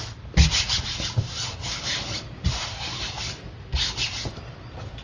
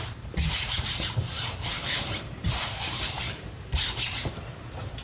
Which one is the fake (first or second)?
second